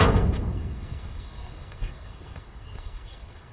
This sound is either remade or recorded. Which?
remade